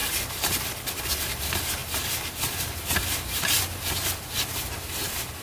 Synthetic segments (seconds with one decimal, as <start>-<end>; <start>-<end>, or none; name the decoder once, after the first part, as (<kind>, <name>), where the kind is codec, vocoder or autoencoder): none